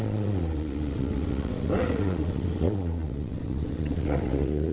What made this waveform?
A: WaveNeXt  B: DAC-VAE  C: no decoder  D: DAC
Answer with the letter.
A